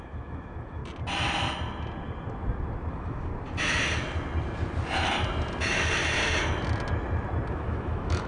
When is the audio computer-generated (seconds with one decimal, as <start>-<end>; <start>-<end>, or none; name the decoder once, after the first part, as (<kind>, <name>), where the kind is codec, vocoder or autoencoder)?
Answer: 0.0-0.8 (autoencoder, DAC-VAE); 2.9-3.3; 7.5-8.3

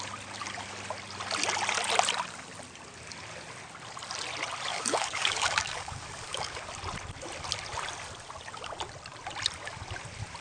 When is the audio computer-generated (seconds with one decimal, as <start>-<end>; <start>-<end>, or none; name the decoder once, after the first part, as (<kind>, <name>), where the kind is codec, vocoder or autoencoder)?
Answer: 4.7-6.7 (codec, DAC)

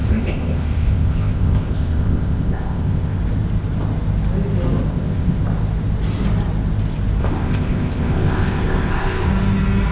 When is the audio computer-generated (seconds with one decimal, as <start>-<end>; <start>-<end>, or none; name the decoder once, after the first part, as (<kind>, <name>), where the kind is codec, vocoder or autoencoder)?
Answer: 0.0-3.2 (codec, ZipCodec); 4.9-5.4; 7.2-9.3

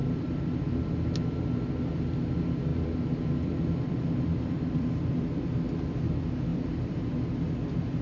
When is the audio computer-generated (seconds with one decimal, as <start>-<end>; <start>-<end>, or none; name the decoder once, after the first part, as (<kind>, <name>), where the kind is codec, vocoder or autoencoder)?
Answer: 0.0-0.7 (vocoder, BigVGAN v2); 2.7-5.2; 6.5-7.1

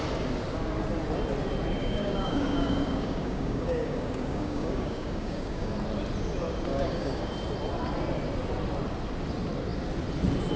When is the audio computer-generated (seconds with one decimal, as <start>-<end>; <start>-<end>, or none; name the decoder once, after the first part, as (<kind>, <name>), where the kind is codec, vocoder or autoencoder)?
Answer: 1.8-5.7 (codec, DAC); 6.7-7.3

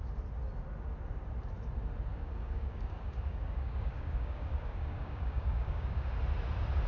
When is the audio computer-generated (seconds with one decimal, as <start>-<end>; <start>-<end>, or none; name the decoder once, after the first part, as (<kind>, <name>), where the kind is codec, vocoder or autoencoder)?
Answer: 2.1-6.1 (codec, DAC)

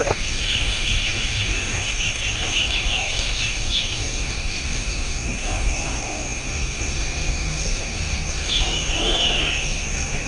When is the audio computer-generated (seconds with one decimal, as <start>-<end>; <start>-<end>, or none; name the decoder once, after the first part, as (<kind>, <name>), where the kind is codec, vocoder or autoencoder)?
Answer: 0.0-10.3 (codec, DAC)